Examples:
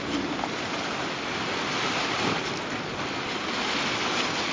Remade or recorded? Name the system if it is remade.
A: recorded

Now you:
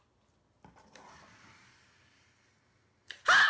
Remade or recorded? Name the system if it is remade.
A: recorded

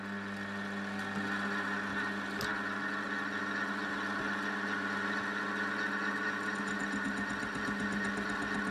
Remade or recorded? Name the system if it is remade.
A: recorded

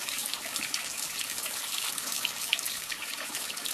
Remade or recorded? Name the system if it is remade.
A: remade, codec, DAC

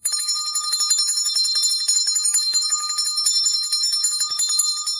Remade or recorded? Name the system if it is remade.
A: remade, autoencoder, DAC-VAE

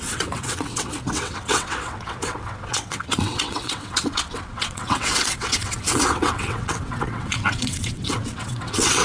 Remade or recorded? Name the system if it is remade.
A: remade, vocoder, WaveNeXt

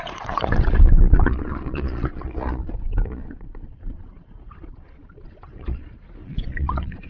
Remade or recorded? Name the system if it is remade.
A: remade, vocoder, Vocos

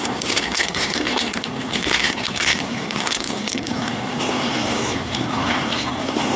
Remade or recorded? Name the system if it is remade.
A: remade, codec, SNAC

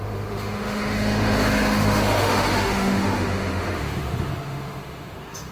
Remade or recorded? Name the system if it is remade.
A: remade, autoencoder, DAC-VAE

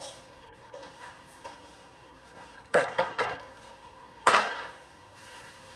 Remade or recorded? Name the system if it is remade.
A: remade, codec, SNAC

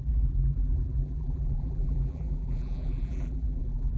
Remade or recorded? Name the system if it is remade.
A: remade, vocoder, BigVGAN v2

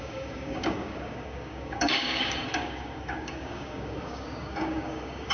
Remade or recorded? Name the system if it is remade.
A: remade, codec, DAC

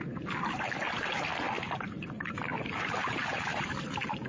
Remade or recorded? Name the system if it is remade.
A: recorded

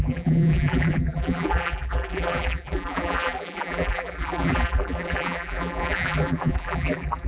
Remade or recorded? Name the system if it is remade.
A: remade, vocoder, BigVGAN v2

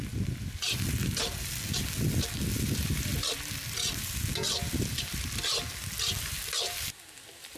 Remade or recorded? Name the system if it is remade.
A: recorded